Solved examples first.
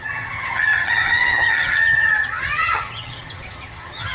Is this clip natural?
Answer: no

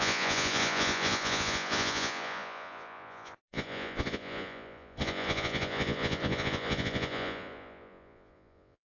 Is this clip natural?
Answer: no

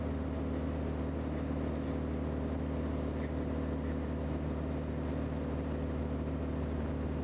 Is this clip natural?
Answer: yes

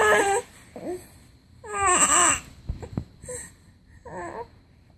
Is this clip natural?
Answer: yes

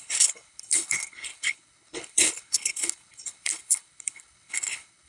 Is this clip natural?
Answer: no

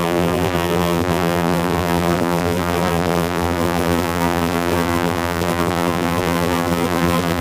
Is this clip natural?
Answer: no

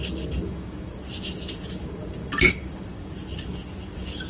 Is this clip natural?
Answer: no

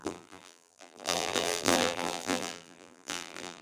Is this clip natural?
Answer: no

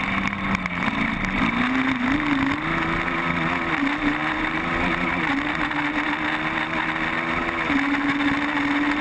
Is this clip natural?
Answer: yes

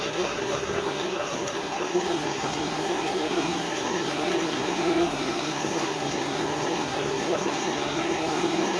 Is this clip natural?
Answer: no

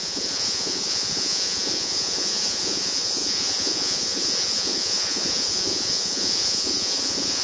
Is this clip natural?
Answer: no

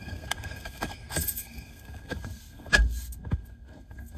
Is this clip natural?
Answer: no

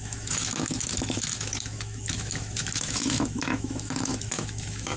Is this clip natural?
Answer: no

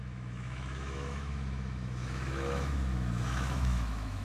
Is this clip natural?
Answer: no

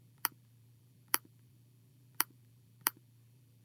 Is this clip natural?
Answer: no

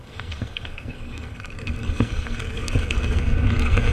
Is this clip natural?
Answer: no